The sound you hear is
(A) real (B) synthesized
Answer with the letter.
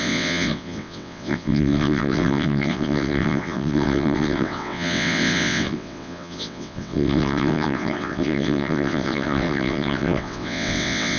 B